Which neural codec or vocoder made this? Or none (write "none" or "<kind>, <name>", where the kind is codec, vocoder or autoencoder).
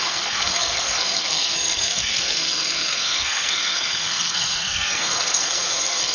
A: codec, SNAC